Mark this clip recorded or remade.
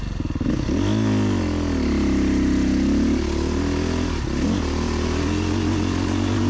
recorded